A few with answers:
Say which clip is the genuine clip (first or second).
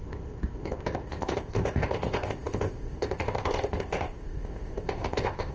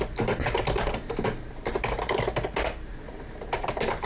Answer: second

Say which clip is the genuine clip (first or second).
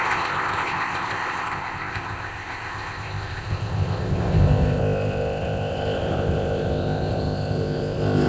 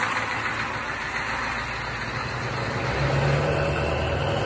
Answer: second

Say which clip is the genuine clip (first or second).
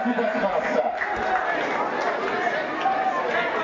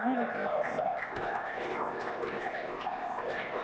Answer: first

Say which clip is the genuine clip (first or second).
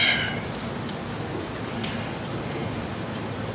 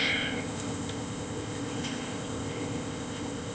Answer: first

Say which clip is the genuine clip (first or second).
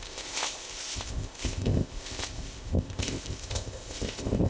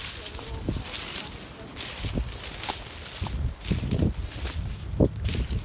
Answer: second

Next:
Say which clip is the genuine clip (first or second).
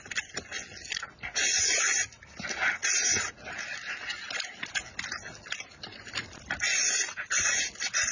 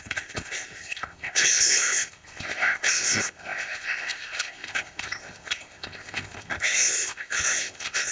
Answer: first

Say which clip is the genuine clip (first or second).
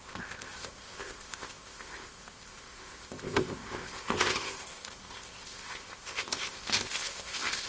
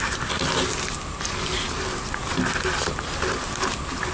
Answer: second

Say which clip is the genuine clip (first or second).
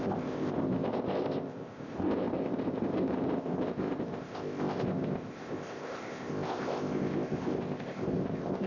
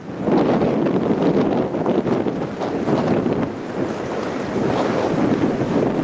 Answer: second